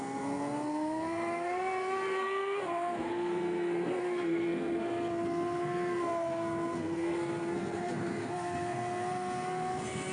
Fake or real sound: fake